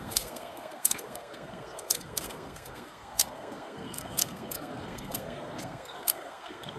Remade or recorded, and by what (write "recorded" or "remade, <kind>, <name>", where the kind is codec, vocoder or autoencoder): remade, codec, SNAC